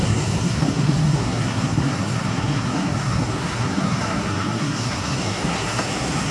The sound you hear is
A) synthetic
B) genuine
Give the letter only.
A